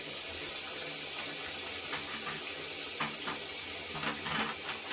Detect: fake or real real